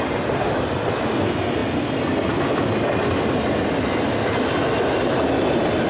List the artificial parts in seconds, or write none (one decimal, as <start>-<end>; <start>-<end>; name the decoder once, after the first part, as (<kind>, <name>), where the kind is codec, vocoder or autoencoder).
none